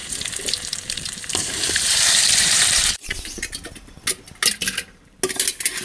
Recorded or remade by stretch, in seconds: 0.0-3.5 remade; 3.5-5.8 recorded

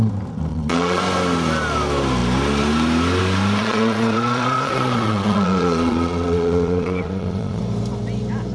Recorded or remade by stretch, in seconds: 0.0-0.5 recorded; 0.5-1.0 remade; 1.0-3.6 recorded; 3.6-7.6 remade; 7.6-8.5 recorded

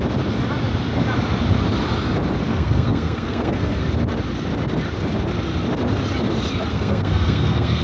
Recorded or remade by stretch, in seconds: 0.0-2.5 recorded; 2.5-3.8 remade; 3.8-6.7 recorded; 6.7-7.8 remade

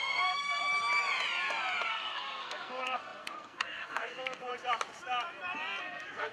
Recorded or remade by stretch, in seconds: 0.0-0.6 remade; 0.6-1.9 recorded; 1.9-4.5 remade; 4.5-5.8 recorded; 5.8-6.3 remade

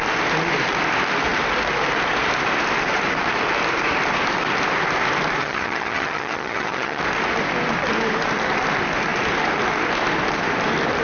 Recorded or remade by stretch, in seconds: 0.0-5.4 recorded; 5.4-7.0 remade; 7.0-11.0 recorded

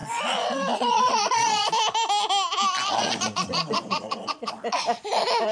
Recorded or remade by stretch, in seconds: 0.0-1.7 remade; 1.7-3.0 recorded; 3.0-4.6 remade; 4.6-5.5 recorded

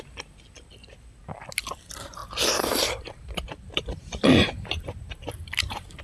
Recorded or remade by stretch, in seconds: 0.0-2.2 recorded; 2.2-6.0 remade

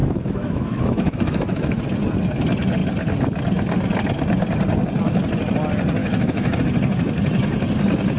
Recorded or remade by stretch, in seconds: 0.0-1.8 remade; 1.8-6.0 recorded; 6.0-6.6 remade; 6.6-8.2 recorded